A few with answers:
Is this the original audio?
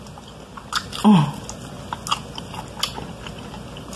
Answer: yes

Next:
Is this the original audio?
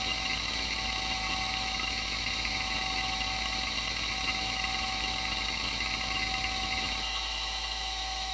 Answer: no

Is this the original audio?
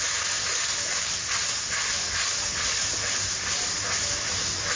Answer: yes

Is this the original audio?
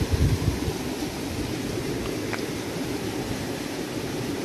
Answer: yes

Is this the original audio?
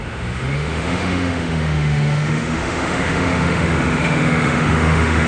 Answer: no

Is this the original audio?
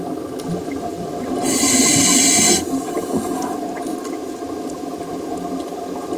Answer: yes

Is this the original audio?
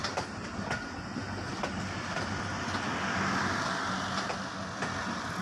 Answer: yes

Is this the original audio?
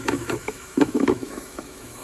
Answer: no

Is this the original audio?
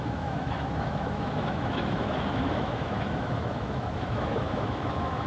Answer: no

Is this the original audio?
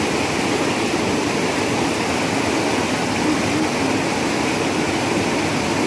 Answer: yes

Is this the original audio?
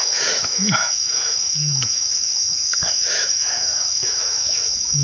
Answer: no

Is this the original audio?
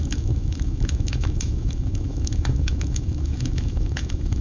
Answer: no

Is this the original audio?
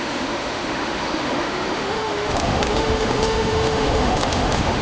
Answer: no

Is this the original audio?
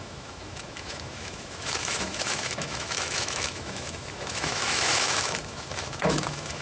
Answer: no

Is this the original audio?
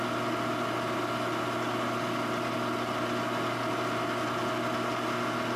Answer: yes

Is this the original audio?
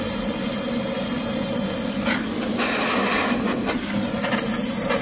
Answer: yes